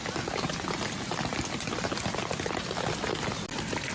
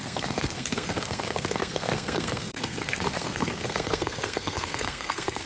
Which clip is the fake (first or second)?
second